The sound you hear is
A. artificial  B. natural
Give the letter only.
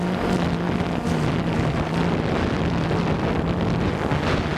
B